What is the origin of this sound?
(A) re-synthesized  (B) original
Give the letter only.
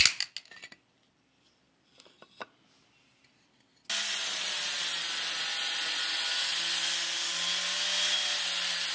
B